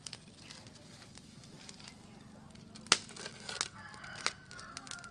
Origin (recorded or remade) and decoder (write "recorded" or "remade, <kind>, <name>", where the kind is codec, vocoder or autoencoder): recorded